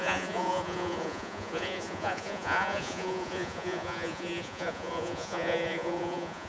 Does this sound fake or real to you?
fake